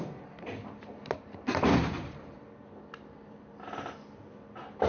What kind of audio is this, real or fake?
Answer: fake